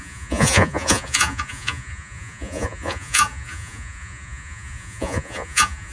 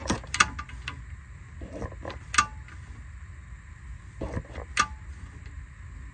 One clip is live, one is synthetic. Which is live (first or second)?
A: second